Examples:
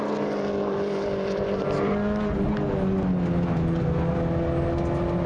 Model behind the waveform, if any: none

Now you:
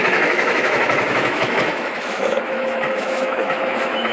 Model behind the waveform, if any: autoencoder, DAC-VAE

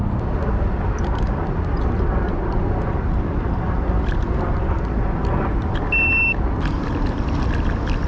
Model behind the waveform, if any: none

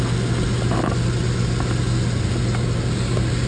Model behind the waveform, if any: none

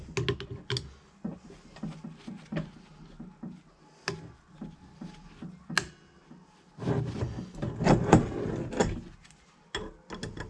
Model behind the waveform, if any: none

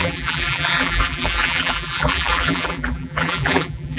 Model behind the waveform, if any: vocoder, BigVGAN v2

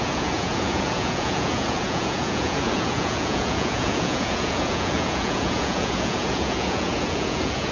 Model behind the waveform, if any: vocoder, Vocos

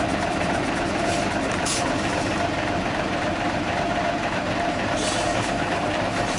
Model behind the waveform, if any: vocoder, BigVGAN v2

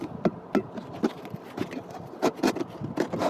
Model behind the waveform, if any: none